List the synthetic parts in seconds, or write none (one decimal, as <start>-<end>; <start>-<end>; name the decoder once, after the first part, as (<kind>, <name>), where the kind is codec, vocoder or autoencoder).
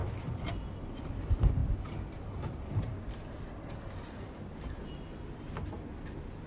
none